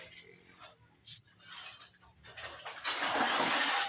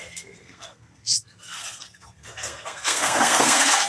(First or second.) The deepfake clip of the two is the second